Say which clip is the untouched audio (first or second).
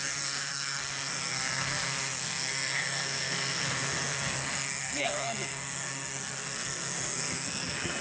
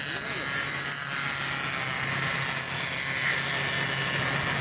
second